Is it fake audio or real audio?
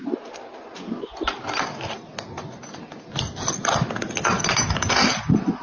real